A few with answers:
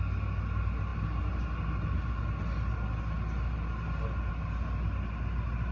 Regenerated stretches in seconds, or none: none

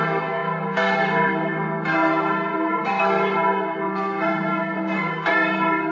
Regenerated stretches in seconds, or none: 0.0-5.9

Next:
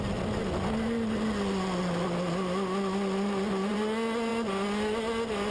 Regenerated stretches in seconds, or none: none

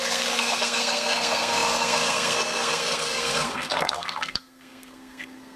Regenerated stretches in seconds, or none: 0.0-5.6

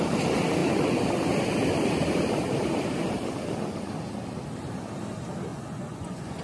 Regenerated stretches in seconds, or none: 5.5-6.4

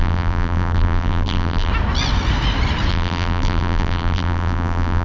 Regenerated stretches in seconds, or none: 0.0-1.7; 2.9-5.0